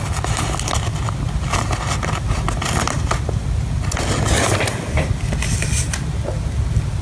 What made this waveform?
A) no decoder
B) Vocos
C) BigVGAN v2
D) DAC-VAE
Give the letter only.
A